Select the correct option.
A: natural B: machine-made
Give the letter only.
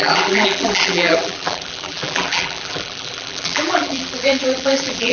B